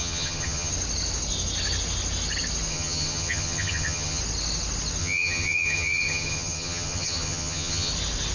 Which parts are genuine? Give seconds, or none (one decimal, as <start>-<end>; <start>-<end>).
0.7-2.7; 4.2-5.0; 7.9-8.3